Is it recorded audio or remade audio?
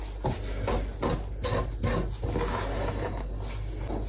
recorded